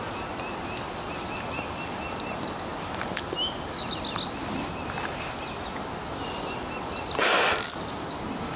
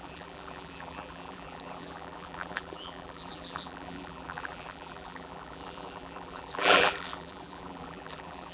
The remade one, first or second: second